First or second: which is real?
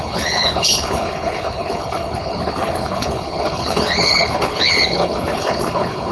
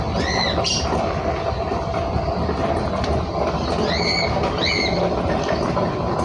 second